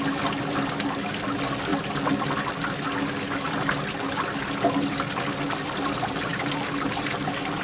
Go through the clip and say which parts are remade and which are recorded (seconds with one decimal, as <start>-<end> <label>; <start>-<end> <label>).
0.0-7.6 recorded